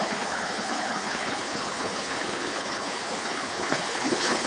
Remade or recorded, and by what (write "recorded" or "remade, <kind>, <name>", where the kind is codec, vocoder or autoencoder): remade, codec, HILCodec